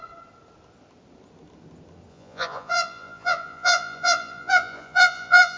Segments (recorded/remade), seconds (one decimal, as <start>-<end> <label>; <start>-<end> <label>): 0.0-2.1 recorded; 2.1-5.6 remade